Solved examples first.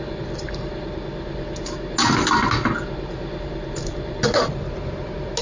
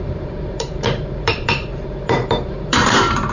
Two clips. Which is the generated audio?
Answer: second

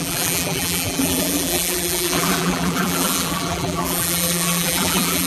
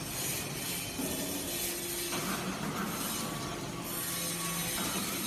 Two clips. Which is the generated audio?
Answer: first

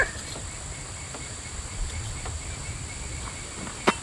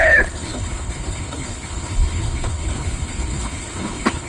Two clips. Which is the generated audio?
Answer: second